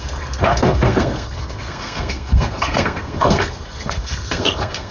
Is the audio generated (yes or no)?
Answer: yes